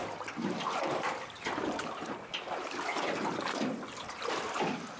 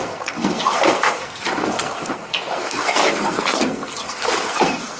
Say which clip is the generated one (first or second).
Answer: second